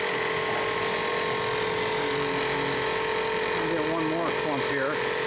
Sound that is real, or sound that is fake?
real